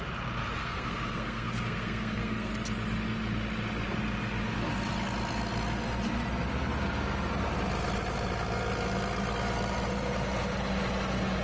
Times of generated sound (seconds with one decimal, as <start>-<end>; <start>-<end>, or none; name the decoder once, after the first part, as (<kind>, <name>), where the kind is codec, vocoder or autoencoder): 0.6-2.5 (codec, SNAC)